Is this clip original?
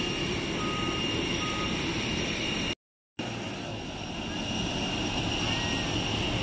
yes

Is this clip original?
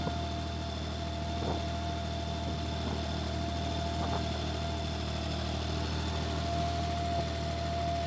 yes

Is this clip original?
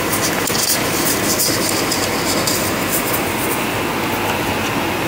yes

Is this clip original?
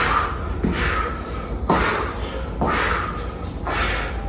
yes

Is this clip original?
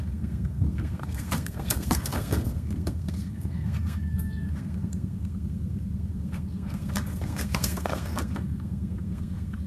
no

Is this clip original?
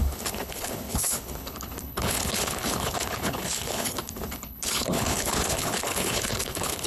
no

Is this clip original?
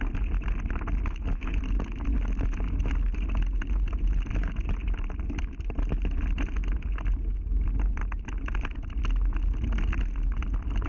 yes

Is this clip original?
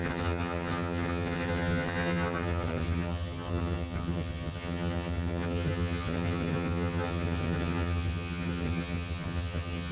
no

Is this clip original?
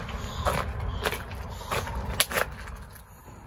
yes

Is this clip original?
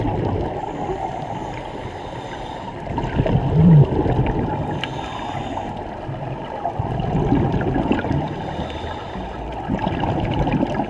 yes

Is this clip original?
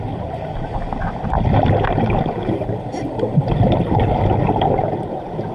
yes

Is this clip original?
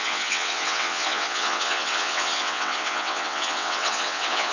no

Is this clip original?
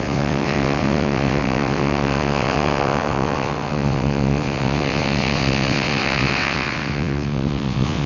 no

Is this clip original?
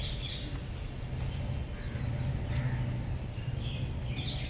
yes